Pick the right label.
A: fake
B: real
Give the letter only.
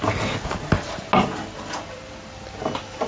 B